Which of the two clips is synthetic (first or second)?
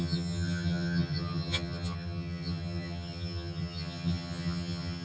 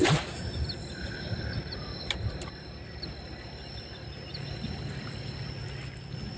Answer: first